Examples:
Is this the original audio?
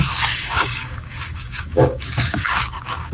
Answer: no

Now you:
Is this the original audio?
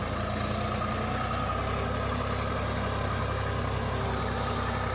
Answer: yes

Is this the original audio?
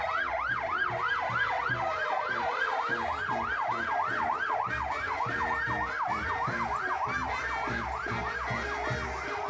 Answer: yes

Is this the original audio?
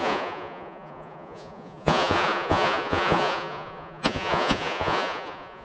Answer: no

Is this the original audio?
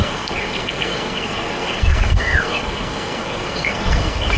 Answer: no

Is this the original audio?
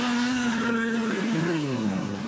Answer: no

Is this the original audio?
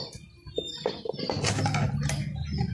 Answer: yes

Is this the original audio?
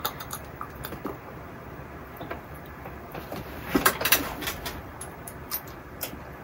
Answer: no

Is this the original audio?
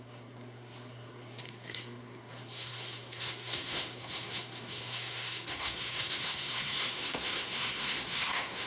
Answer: no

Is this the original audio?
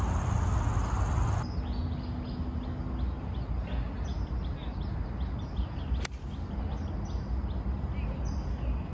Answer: yes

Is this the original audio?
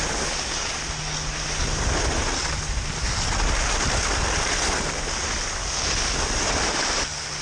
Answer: yes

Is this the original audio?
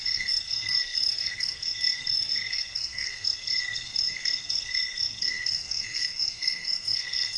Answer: no